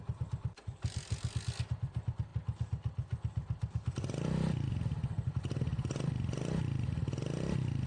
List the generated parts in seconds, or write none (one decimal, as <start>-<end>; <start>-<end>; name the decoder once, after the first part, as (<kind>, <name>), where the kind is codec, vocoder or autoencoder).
none